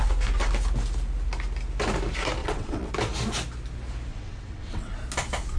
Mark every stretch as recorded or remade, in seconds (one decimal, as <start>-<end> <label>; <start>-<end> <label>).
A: 0.0-2.4 recorded; 2.4-2.9 remade; 2.9-4.1 recorded; 4.1-5.0 remade; 5.0-5.6 recorded